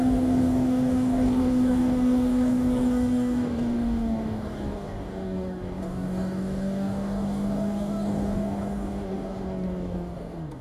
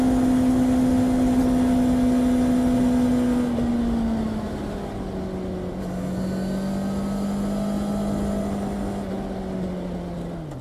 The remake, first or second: first